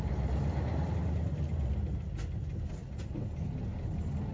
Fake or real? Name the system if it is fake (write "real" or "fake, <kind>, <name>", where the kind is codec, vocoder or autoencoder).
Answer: real